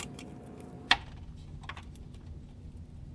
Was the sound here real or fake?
real